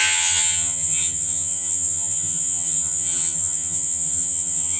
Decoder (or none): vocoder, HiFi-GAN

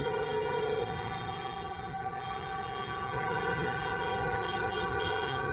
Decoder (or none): vocoder, HiFi-GAN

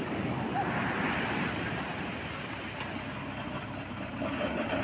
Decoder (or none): none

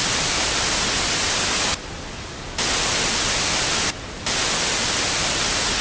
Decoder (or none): none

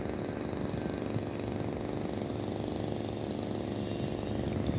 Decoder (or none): none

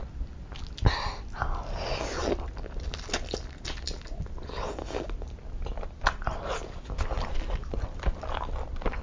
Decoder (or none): none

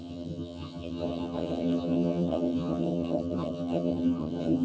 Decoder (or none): vocoder, HiFi-GAN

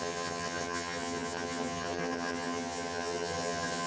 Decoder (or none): vocoder, HiFi-GAN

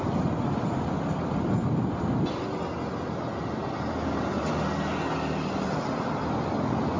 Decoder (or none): none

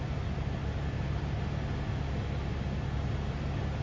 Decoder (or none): none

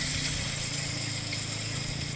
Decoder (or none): none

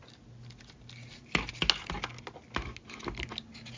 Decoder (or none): none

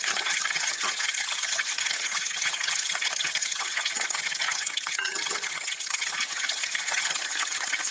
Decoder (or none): vocoder, HiFi-GAN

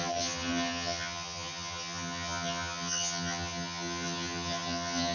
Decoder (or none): vocoder, HiFi-GAN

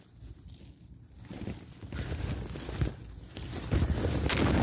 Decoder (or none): none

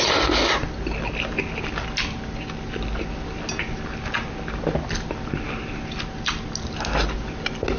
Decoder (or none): none